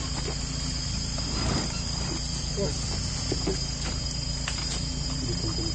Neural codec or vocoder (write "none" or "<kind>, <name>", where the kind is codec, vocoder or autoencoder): none